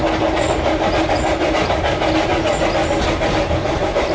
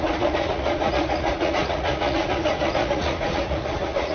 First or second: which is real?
first